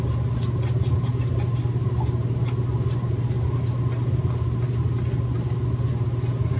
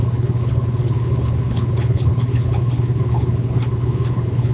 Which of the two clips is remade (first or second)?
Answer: second